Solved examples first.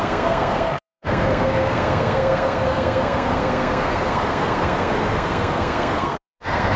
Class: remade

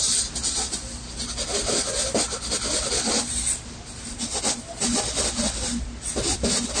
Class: recorded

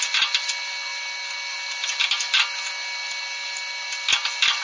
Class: recorded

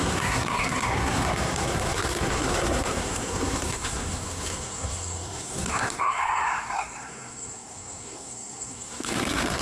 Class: remade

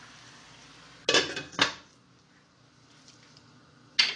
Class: recorded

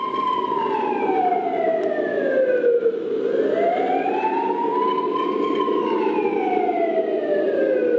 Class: recorded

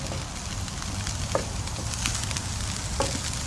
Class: recorded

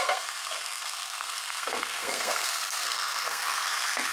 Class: remade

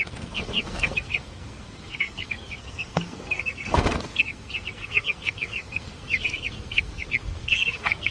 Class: remade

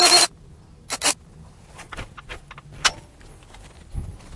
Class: recorded